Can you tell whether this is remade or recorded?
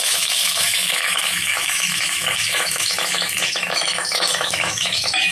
remade